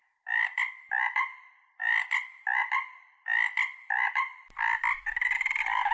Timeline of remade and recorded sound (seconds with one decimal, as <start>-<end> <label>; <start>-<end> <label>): 0.0-0.9 remade; 0.9-4.3 recorded; 4.3-5.1 remade; 5.1-5.9 recorded